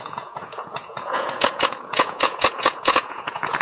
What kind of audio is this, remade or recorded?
remade